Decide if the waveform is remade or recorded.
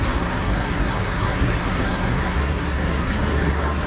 remade